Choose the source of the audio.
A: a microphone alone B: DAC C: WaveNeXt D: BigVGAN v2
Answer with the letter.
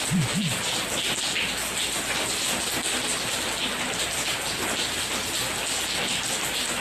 A